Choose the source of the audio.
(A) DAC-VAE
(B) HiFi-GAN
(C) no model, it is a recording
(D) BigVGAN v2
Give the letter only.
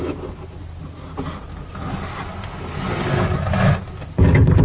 C